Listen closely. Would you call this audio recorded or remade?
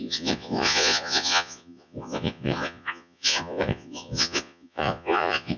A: remade